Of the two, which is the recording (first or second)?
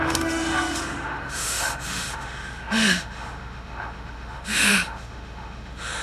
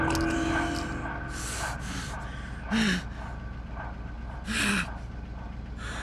second